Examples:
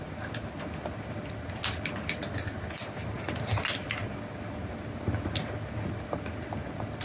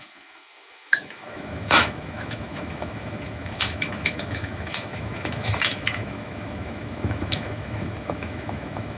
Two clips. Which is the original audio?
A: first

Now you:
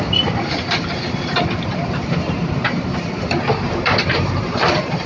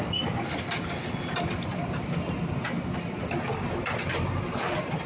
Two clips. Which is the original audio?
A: second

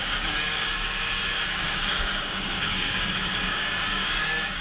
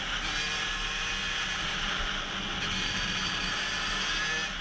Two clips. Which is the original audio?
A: second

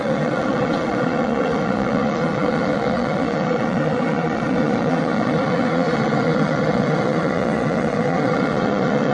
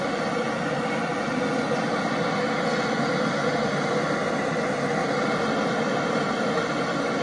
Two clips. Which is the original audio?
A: second